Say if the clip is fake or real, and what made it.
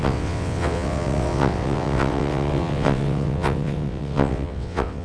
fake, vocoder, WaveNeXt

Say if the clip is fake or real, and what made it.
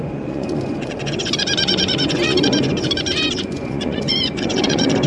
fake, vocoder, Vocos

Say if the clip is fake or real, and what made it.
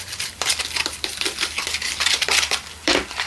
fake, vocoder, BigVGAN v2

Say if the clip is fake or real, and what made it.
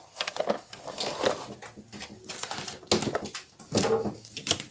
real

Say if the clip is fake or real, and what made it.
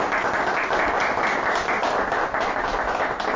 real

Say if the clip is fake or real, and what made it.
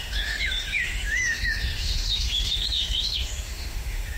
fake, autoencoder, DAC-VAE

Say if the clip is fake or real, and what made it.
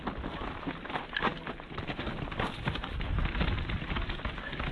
real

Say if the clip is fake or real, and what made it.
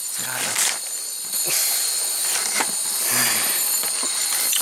fake, vocoder, BigVGAN v2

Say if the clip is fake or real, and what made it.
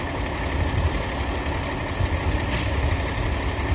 real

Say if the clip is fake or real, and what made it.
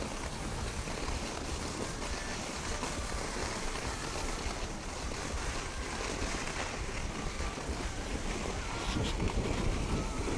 real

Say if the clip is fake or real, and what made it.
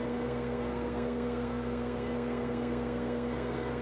fake, codec, SNAC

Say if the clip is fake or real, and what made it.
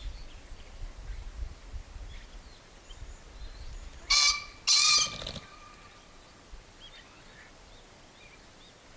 real